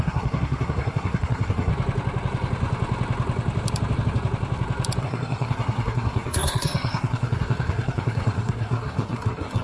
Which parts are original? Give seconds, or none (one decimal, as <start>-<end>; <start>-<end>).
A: 1.7-5.0